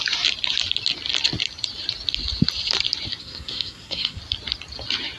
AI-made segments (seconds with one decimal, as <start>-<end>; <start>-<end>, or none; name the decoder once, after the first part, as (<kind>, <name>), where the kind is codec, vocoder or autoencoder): 3.2-4.2 (codec, SNAC)